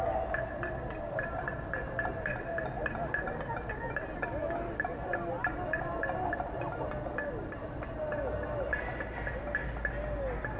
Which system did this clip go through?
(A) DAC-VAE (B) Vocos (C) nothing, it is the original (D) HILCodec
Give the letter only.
C